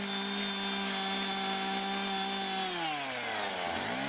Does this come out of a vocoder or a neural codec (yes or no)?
no